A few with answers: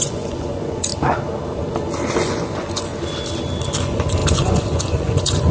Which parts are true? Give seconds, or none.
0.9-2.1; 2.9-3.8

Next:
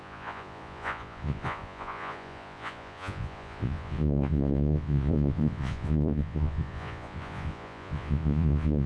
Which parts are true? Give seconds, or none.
none

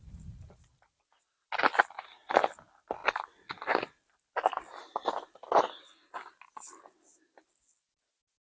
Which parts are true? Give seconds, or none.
0.0-8.4

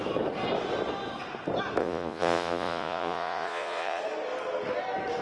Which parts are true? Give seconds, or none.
0.0-1.8; 4.0-5.2

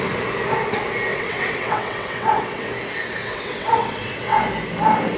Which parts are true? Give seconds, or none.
0.0-1.1; 2.7-3.2; 4.4-5.2

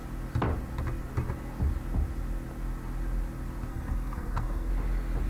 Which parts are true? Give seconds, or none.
0.0-3.7; 4.7-5.3

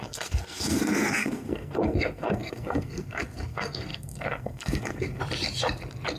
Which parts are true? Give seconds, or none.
5.2-6.2